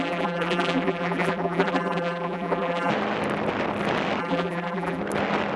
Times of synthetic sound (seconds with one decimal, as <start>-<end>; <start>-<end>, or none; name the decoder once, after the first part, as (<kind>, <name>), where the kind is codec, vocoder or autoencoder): 0.0-2.9 (vocoder, BigVGAN v2); 4.2-5.0